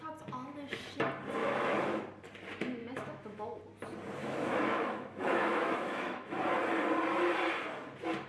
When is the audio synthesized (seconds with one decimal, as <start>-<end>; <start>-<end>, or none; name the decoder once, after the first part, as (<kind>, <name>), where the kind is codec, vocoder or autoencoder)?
1.4-2.0 (autoencoder, DAC-VAE); 2.8-3.6; 4.2-6.4